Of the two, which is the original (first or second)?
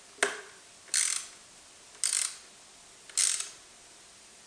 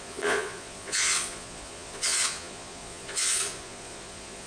first